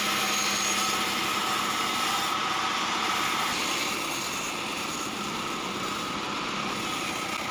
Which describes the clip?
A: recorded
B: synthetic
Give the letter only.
A